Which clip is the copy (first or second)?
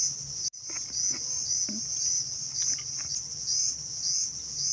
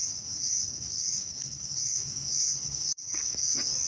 second